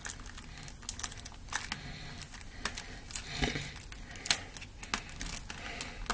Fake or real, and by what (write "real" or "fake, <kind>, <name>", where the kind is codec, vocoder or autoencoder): real